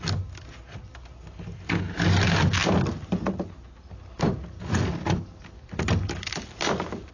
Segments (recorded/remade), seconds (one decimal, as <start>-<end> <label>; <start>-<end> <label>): 0.0-7.1 recorded